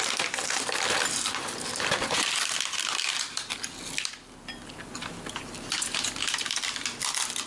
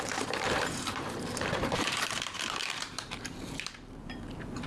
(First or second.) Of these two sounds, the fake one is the second